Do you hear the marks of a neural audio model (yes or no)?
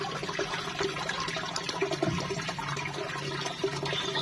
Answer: no